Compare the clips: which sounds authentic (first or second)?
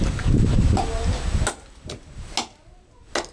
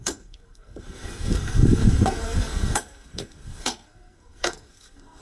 first